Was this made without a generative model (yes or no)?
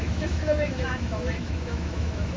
no